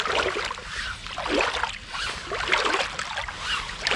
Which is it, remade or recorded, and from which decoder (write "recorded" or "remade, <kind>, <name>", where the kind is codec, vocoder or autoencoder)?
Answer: recorded